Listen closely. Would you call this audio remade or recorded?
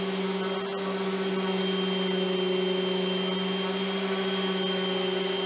recorded